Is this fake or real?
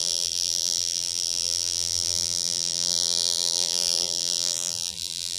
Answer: fake